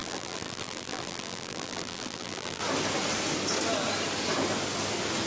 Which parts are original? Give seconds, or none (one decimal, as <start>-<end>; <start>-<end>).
2.6-5.3